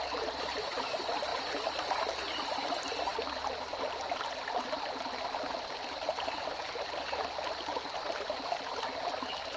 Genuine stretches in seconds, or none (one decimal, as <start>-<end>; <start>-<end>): 0.0-9.6